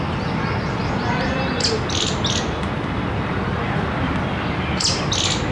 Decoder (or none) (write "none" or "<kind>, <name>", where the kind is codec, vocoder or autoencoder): none